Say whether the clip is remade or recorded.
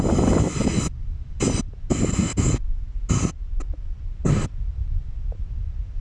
recorded